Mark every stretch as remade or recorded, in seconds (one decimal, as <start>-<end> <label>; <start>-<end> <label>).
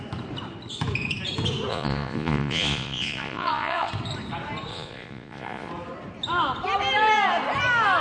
0.0-1.7 recorded; 1.7-3.9 remade; 3.9-4.7 recorded; 4.7-5.7 remade; 5.7-8.0 recorded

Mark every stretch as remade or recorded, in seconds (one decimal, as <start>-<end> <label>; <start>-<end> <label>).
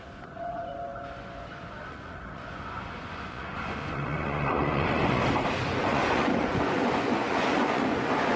0.0-5.2 remade; 5.2-5.7 recorded; 5.7-8.4 remade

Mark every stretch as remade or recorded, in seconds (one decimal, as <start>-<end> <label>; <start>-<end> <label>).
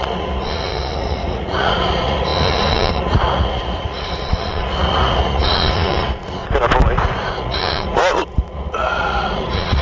0.0-6.4 remade; 6.4-7.3 recorded; 7.3-9.8 remade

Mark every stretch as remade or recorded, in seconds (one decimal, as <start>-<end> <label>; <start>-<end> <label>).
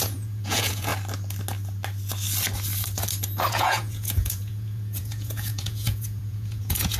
0.0-0.9 remade; 0.9-3.5 recorded; 3.5-7.0 remade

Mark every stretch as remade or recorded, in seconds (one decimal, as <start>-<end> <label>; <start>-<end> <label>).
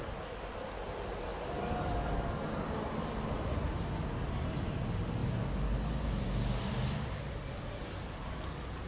0.0-8.9 recorded